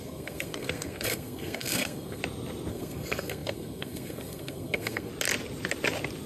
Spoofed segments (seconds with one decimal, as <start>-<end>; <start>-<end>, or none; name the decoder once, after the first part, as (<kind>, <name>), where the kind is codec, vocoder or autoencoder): 0.0-2.2 (codec, SNAC); 2.7-5.1